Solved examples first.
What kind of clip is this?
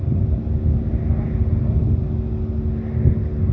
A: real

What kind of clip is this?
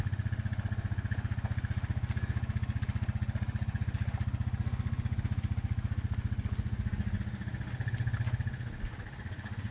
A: real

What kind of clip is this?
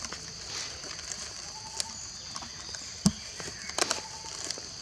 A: real